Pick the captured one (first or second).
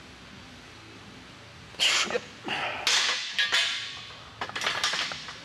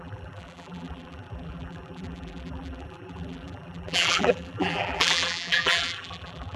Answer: first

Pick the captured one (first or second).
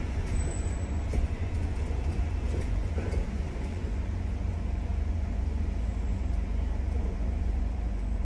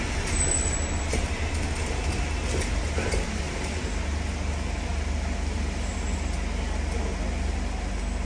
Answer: second